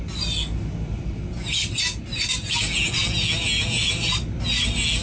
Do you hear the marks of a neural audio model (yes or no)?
no